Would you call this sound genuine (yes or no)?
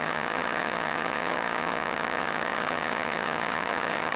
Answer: no